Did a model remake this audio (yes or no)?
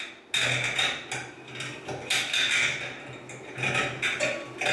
no